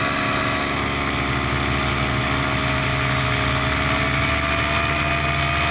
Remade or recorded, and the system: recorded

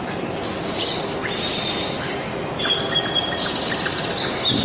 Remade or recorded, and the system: recorded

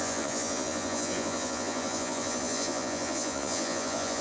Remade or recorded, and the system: remade, vocoder, Vocos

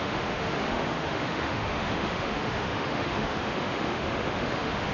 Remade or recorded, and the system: remade, autoencoder, DAC-VAE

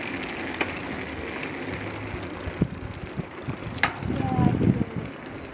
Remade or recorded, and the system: recorded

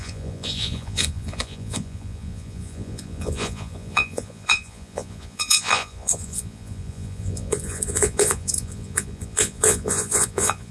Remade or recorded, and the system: remade, vocoder, Vocos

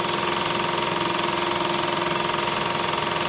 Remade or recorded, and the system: recorded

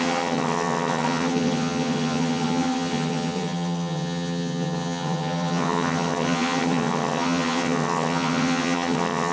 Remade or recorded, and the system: remade, vocoder, HiFi-GAN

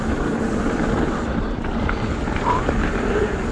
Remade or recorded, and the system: remade, vocoder, BigVGAN v2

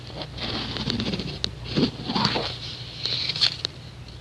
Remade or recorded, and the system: recorded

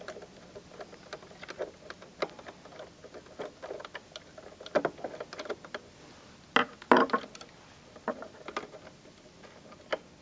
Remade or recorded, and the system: recorded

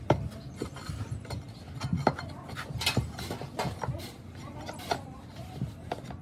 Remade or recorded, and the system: recorded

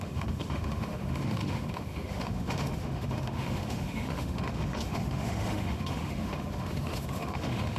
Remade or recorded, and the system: remade, autoencoder, DAC-VAE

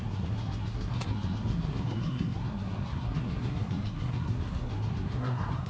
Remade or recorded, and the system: remade, codec, SNAC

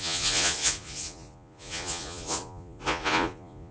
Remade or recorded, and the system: remade, vocoder, Vocos